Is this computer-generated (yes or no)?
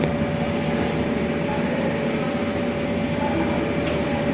no